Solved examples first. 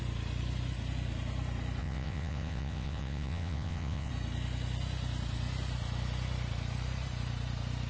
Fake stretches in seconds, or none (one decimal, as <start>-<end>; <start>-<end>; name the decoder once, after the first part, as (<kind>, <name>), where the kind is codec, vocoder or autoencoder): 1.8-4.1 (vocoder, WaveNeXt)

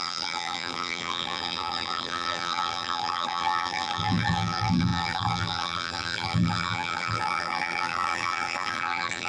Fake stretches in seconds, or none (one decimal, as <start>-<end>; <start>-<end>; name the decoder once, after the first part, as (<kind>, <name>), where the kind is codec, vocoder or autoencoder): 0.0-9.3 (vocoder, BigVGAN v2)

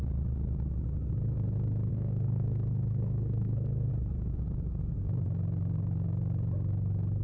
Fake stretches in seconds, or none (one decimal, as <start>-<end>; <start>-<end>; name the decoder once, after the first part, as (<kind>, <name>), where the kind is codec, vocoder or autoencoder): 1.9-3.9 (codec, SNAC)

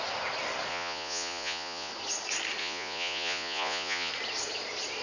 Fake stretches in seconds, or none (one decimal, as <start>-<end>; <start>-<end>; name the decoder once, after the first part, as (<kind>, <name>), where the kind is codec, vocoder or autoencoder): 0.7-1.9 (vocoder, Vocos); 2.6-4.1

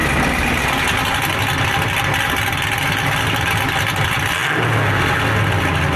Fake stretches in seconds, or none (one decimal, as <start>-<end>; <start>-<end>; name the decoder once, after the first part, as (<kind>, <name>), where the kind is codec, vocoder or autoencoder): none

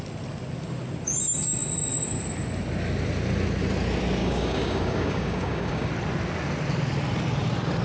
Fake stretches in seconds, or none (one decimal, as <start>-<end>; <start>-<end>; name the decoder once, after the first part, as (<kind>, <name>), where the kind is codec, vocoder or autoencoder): 4.2-5.9 (codec, DAC)

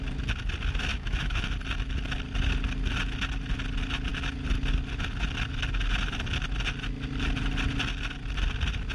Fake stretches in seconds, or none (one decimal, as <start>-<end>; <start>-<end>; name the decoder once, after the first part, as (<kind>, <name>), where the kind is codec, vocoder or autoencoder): 0.9-1.4 (autoencoder, DAC-VAE)

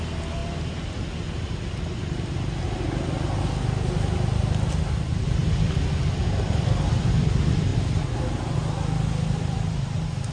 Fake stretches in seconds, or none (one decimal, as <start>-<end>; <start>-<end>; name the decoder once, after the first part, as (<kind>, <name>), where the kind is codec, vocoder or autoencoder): none